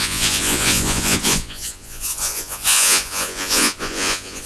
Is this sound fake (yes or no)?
yes